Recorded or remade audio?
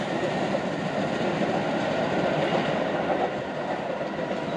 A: recorded